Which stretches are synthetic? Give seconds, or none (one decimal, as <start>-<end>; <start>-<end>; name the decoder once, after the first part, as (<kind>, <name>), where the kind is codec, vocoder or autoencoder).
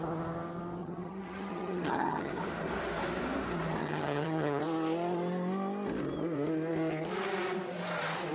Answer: 0.8-2.3 (vocoder, HiFi-GAN); 3.8-4.6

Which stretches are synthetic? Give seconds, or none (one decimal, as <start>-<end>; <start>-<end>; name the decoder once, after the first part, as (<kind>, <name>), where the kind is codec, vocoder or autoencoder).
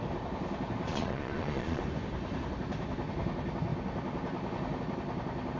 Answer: 0.9-1.8 (vocoder, Vocos)